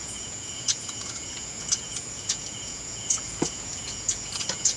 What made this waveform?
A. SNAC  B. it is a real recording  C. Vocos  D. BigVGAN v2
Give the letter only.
C